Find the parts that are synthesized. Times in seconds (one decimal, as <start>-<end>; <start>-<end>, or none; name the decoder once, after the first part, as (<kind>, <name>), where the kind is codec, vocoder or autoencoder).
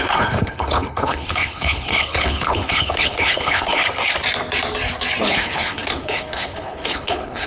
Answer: 0.0-3.8 (codec, HILCodec); 5.2-7.5